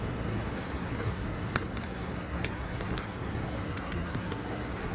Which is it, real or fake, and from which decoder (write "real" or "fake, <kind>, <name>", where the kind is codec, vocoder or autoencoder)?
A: fake, codec, SNAC